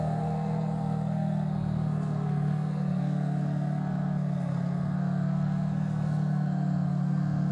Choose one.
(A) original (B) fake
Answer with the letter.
B